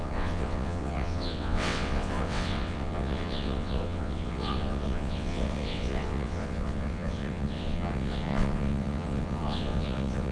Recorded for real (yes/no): no